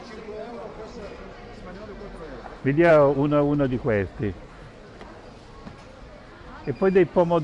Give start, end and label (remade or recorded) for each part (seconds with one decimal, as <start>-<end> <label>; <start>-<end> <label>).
0.0-7.4 recorded